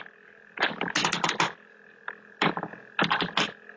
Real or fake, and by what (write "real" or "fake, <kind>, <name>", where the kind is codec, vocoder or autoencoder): real